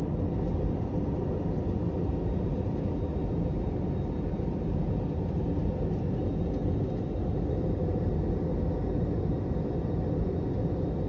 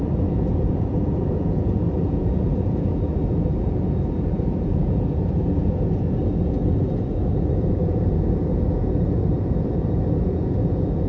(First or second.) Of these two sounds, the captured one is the first